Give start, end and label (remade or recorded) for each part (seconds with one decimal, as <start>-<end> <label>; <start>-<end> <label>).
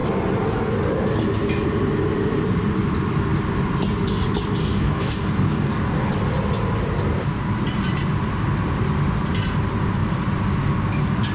0.0-4.6 recorded; 4.6-6.1 remade; 6.1-11.3 recorded